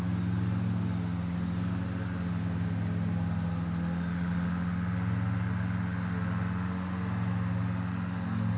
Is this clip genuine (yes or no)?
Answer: yes